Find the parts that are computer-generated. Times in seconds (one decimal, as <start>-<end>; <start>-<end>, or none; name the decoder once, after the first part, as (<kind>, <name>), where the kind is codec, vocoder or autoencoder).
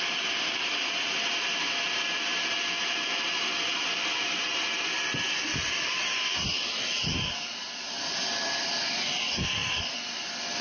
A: none